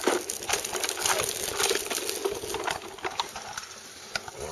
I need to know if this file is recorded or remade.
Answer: recorded